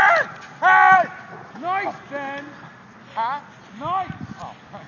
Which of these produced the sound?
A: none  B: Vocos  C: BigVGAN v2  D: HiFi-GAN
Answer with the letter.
A